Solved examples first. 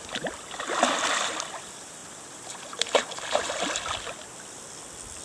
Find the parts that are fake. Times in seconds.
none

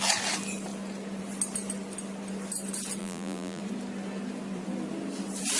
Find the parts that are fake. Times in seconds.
3.0-3.6 (vocoder, BigVGAN v2)

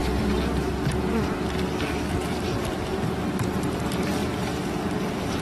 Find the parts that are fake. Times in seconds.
2.9-3.8 (vocoder, BigVGAN v2)

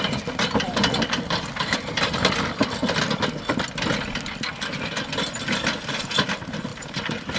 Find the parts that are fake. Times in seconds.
6.7-7.4 (vocoder, BigVGAN v2)

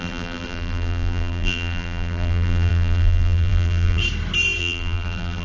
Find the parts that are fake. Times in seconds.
0.0-4.0 (vocoder, BigVGAN v2); 4.6-5.4

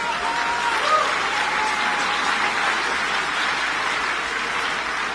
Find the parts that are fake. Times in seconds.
1.9-3.9 (vocoder, BigVGAN v2)